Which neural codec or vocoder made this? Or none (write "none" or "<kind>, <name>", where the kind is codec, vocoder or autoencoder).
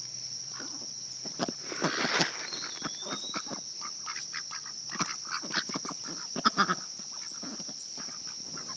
none